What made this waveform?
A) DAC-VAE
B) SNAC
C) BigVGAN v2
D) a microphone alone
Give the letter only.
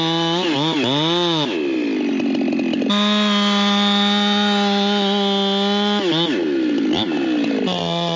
D